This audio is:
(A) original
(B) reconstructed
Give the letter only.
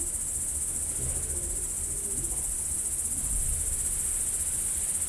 A